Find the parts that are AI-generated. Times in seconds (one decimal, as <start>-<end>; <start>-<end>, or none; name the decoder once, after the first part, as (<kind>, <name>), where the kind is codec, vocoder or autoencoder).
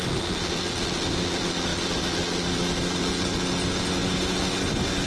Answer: none